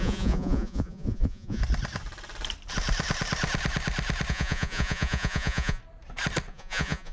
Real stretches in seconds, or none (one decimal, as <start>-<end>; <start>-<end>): 1.6-4.3; 5.8-6.5